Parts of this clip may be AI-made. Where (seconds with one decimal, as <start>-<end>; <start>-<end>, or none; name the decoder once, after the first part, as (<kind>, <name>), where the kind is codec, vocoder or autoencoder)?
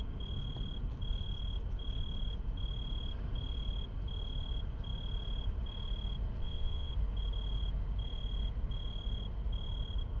6.4-6.9 (vocoder, WaveNeXt)